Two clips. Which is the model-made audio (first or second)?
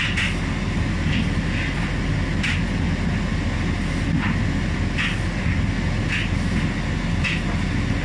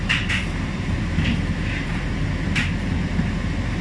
second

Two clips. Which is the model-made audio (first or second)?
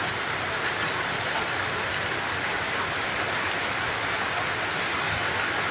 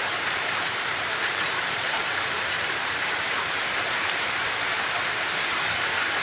second